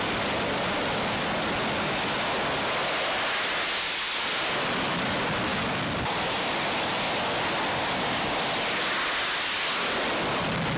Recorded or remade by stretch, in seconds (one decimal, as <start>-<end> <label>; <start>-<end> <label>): 0.0-7.7 recorded; 7.7-8.4 remade; 8.4-10.8 recorded